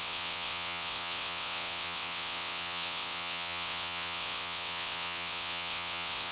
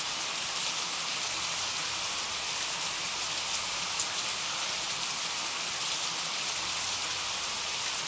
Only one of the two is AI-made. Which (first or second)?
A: first